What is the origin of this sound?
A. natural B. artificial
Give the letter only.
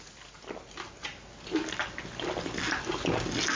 A